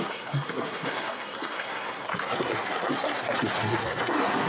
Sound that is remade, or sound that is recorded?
remade